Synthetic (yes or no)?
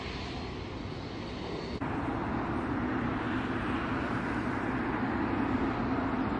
no